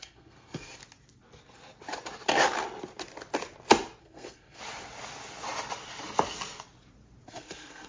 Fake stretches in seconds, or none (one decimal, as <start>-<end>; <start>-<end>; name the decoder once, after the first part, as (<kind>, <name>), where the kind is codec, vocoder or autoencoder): 0.0-0.8 (codec, SNAC); 4.0-4.6; 7.3-7.9